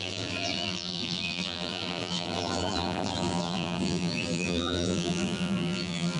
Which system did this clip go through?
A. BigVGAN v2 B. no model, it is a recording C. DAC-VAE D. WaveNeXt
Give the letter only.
A